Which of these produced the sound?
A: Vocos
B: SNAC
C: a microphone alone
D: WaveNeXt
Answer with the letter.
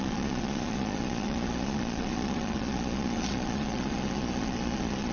A